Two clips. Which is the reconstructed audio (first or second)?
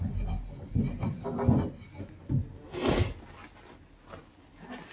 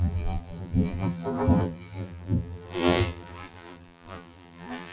second